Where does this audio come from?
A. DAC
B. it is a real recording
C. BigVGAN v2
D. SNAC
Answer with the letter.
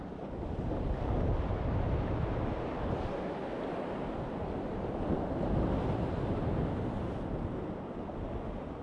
B